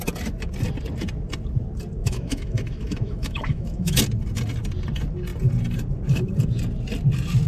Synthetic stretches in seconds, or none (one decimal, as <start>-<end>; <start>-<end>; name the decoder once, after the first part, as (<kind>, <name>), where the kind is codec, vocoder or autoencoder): 2.0-4.0 (autoencoder, DAC-VAE)